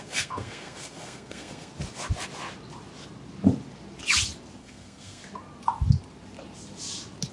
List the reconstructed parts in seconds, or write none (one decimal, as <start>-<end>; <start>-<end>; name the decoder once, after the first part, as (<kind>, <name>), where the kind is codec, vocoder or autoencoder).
0.0-1.7 (codec, SNAC); 4.6-5.2